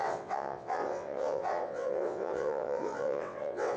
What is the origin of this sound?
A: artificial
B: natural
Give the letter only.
A